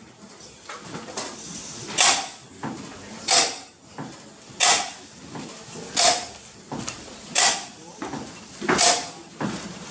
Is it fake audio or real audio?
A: real